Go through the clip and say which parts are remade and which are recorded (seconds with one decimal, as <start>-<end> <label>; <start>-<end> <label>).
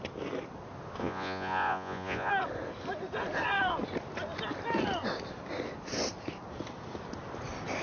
0.0-1.0 recorded; 1.0-2.3 remade; 2.3-7.8 recorded